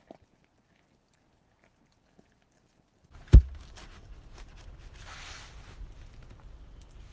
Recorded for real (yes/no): yes